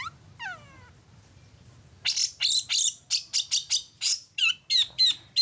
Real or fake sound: real